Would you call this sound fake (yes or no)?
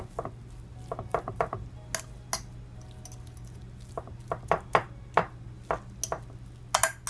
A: no